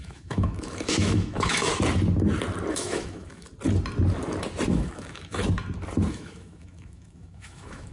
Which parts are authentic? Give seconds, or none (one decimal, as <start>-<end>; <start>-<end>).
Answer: 1.7-2.7; 3.5-4.7; 5.4-6.1